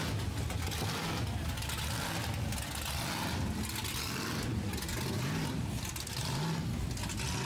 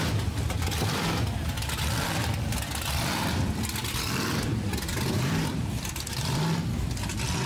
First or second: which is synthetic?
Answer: second